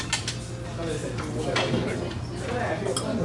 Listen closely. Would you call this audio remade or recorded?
recorded